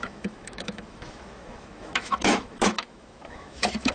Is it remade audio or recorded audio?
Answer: remade